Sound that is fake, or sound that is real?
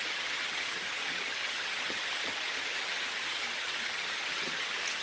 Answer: fake